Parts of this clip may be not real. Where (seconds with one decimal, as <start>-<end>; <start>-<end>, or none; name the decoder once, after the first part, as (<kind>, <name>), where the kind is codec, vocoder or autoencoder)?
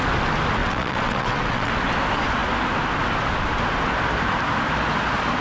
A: 0.6-1.7 (vocoder, WaveNeXt)